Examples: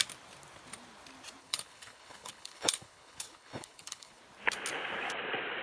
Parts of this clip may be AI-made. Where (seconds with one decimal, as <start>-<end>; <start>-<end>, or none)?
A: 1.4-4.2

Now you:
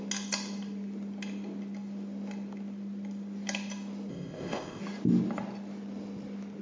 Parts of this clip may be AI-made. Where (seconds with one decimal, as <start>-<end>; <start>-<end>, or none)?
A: 4.1-4.8

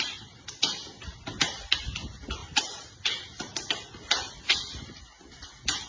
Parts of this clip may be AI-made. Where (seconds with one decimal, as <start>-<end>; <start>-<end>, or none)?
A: 2.4-3.0

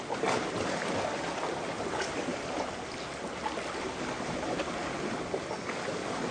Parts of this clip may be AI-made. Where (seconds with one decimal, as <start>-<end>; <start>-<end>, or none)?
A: none

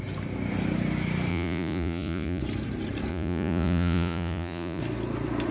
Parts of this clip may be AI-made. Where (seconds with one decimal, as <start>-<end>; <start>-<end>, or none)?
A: 1.3-2.4; 3.1-4.8

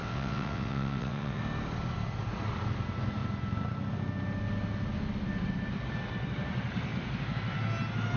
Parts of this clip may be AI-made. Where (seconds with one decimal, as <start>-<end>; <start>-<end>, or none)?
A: 0.0-1.4

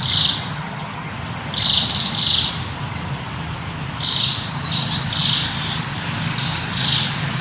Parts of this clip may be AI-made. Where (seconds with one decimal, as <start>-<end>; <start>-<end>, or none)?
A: 0.5-1.1